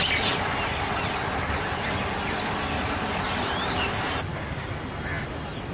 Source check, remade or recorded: recorded